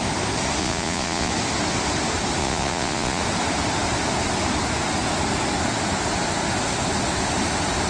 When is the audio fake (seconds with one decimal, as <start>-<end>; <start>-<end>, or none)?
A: 0.6-1.3; 2.4-3.2